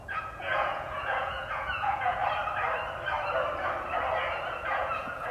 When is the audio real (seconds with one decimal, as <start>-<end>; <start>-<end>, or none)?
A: 2.2-4.5